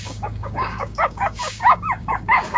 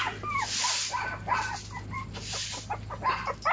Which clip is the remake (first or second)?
first